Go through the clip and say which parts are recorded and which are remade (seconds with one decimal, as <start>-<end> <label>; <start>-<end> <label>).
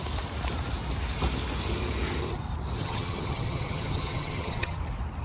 0.0-2.8 recorded; 2.8-4.8 remade; 4.8-5.2 recorded